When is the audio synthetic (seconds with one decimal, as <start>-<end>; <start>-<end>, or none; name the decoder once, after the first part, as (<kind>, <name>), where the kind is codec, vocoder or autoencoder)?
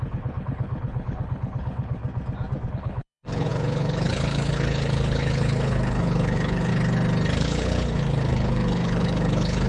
0.0-2.0 (codec, HILCodec); 2.7-6.7; 7.4-9.7